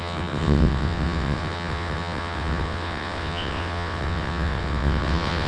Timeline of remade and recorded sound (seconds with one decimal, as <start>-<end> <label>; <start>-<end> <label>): 0.0-5.5 remade